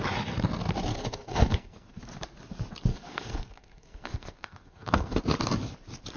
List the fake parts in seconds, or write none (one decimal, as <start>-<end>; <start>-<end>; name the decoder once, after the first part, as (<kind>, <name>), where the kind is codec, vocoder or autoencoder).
0.9-2.0 (codec, SNAC); 2.9-5.2